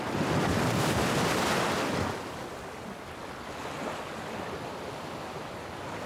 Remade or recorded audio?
recorded